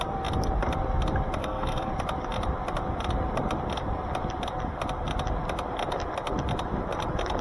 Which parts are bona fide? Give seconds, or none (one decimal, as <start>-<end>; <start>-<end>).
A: 0.0-1.4; 1.9-7.4